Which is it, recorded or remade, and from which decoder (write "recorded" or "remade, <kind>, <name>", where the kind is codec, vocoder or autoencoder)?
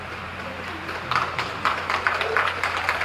remade, vocoder, BigVGAN v2